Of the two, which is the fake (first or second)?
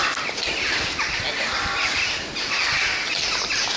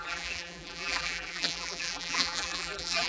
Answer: second